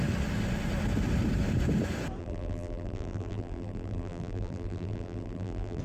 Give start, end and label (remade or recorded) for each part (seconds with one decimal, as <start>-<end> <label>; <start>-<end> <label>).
0.0-2.2 recorded; 2.2-5.8 remade